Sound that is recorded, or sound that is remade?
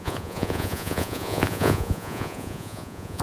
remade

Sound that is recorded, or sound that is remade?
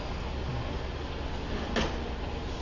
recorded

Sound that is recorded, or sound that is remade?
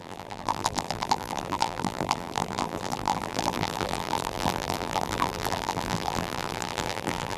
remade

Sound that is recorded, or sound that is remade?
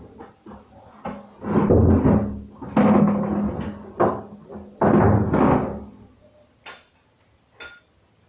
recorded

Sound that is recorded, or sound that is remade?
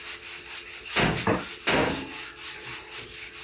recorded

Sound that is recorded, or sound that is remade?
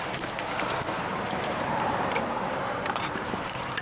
remade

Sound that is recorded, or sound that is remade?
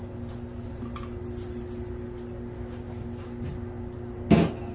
recorded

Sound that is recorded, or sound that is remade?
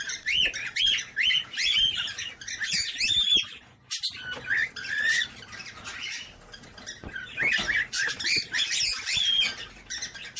recorded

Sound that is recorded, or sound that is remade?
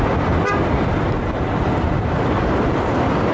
recorded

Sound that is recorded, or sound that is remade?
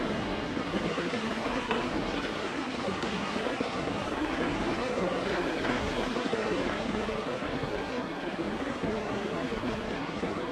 remade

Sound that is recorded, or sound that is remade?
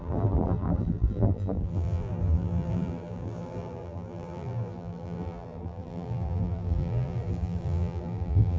remade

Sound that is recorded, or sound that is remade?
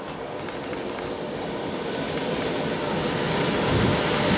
recorded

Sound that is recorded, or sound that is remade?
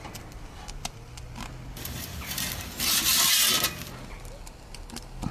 remade